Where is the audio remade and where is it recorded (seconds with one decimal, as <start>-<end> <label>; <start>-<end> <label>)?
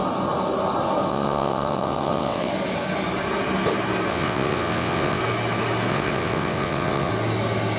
0.0-1.1 recorded; 1.1-2.5 remade; 2.5-4.1 recorded; 4.1-5.2 remade; 5.2-5.9 recorded; 5.9-7.1 remade; 7.1-7.8 recorded